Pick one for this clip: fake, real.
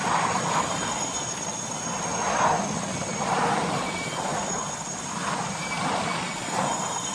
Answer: real